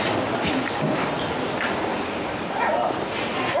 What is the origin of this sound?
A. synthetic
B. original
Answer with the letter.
B